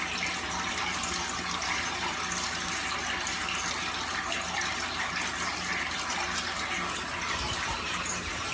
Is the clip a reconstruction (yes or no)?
no